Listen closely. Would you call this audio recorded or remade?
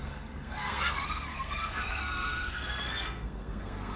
remade